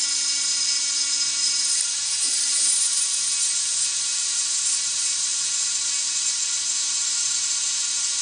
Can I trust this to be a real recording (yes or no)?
yes